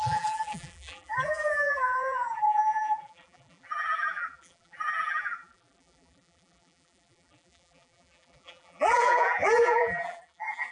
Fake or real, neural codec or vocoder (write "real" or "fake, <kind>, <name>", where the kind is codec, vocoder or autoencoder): fake, vocoder, BigVGAN v2